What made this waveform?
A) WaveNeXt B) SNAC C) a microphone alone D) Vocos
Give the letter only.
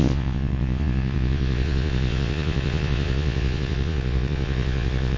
D